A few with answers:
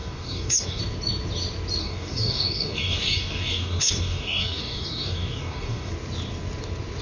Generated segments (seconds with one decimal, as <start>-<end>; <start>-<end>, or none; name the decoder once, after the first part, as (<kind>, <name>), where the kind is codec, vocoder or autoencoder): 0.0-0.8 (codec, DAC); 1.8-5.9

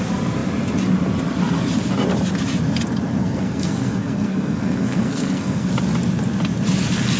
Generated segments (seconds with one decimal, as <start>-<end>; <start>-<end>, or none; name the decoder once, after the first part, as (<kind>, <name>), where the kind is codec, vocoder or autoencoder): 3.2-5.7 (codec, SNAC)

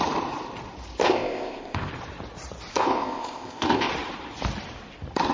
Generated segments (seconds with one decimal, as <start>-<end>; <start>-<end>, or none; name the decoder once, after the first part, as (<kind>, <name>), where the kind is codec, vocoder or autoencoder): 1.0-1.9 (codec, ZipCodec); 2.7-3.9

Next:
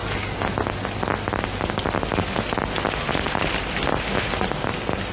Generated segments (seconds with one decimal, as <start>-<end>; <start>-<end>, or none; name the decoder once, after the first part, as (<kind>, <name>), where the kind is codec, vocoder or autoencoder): 3.1-5.1 (vocoder, BigVGAN v2)

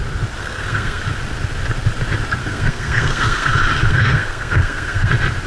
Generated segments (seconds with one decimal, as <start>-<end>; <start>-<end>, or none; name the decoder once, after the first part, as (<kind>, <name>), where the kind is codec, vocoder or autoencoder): 0.4-1.0 (codec, SNAC); 2.4-3.5; 3.9-5.1

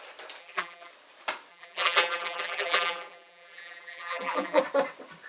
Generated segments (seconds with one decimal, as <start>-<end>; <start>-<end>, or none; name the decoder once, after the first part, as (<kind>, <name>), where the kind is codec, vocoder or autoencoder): 0.4-0.9 (vocoder, BigVGAN v2); 1.5-4.6

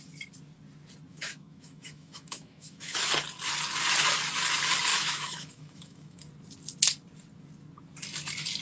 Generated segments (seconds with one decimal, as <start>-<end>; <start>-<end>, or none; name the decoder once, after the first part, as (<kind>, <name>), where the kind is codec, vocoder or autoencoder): 1.1-3.1 (autoencoder, DAC-VAE); 4.9-6.2